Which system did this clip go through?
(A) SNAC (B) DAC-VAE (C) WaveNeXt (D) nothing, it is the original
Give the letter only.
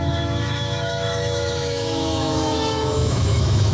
B